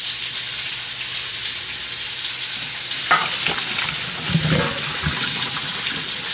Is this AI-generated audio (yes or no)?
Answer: no